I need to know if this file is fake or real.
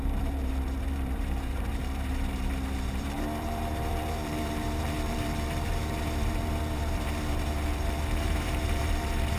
fake